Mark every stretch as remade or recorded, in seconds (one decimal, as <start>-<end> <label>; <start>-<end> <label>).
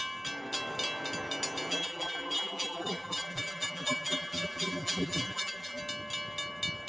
0.0-1.7 recorded; 1.7-5.8 remade; 5.8-6.9 recorded